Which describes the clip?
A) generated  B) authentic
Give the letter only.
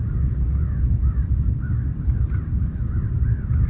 B